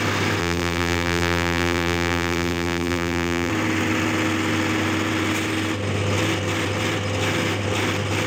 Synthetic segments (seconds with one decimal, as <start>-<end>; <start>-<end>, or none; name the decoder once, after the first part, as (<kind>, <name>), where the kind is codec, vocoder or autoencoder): 0.4-3.5 (vocoder, BigVGAN v2)